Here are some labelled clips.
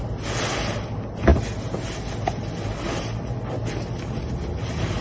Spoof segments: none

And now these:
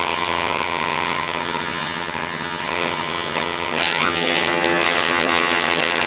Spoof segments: 0.0-6.1 (vocoder, HiFi-GAN)

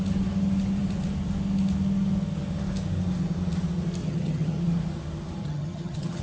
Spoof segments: 4.0-4.6 (vocoder, HiFi-GAN); 5.4-6.2

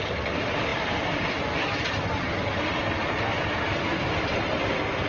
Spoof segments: none

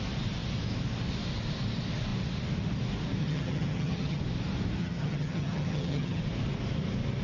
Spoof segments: 3.2-4.2 (vocoder, HiFi-GAN); 4.8-6.2

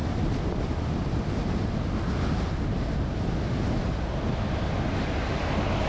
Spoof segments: none